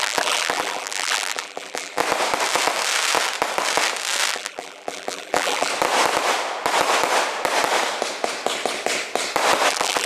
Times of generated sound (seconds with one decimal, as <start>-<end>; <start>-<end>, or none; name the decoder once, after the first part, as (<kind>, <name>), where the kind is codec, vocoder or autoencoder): 0.0-2.0 (vocoder, BigVGAN v2); 4.3-5.7; 9.7-10.1